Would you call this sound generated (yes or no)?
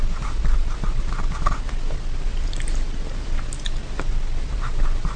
no